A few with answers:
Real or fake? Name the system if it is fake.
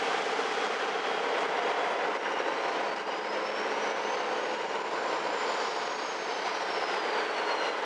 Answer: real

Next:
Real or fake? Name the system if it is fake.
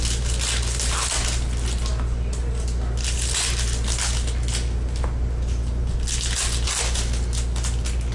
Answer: real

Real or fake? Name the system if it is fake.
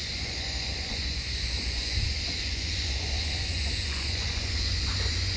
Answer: fake, vocoder, Vocos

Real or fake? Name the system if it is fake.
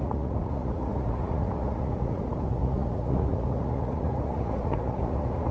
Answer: fake, vocoder, Vocos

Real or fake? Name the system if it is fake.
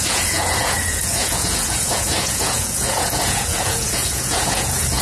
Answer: fake, vocoder, Vocos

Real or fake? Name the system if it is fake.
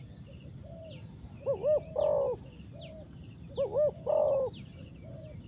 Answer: real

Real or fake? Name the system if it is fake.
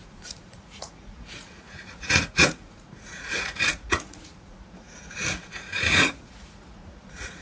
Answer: fake, vocoder, Vocos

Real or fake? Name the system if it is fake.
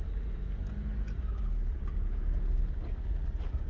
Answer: real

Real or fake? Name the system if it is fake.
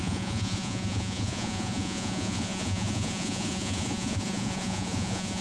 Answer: fake, vocoder, Vocos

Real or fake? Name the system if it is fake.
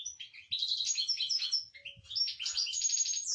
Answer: real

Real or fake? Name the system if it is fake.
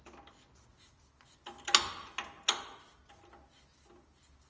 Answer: real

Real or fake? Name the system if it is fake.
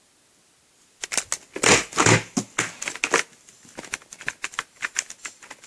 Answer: real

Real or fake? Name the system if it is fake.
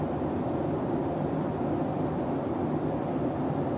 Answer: real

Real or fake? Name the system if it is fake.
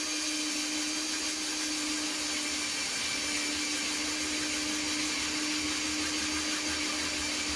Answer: real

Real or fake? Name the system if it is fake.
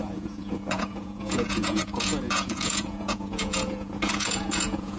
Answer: fake, vocoder, Vocos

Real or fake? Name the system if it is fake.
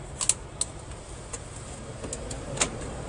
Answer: real